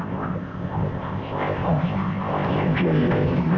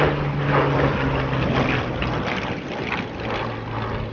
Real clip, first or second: second